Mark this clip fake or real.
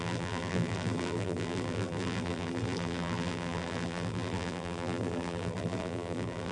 fake